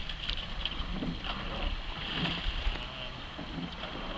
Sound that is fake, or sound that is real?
real